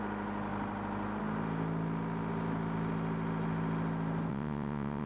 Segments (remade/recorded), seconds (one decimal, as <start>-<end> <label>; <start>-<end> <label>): 0.0-4.3 recorded; 4.3-5.1 remade

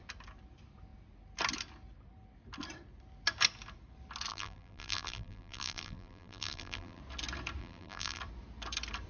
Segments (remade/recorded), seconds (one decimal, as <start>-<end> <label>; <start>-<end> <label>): 0.0-4.3 recorded; 4.3-7.0 remade; 7.0-7.6 recorded; 7.6-8.2 remade; 8.2-9.1 recorded

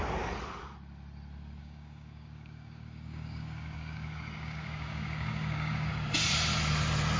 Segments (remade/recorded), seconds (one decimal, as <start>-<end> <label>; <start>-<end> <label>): 0.0-1.6 recorded; 1.6-5.9 remade; 5.9-7.2 recorded

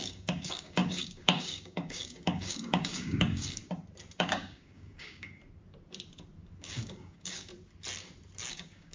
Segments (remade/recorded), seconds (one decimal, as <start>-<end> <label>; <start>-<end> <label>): 0.0-3.6 remade; 3.6-4.2 recorded; 4.2-5.4 remade; 5.4-6.6 recorded; 6.6-7.5 remade; 7.5-8.5 recorded; 8.5-8.9 remade

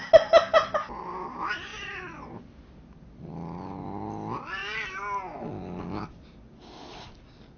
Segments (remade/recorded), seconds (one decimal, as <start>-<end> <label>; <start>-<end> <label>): 0.0-1.7 recorded; 1.7-2.7 remade; 2.7-7.6 recorded

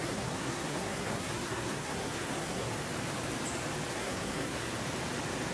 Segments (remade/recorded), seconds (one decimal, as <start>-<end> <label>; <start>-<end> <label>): 0.0-2.7 remade; 2.7-3.9 recorded; 3.9-4.7 remade; 4.7-5.5 recorded